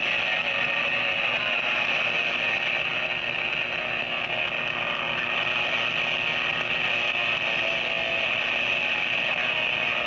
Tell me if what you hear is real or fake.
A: real